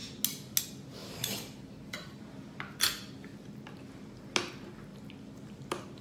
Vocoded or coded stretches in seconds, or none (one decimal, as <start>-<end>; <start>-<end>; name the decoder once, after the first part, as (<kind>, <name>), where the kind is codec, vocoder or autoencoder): 1.0-2.2 (vocoder, BigVGAN v2)